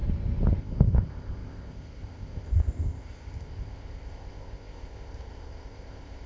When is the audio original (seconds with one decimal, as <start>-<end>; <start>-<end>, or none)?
0.0-0.6